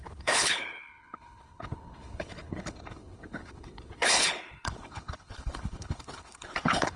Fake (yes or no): yes